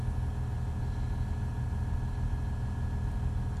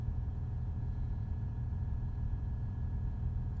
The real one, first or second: first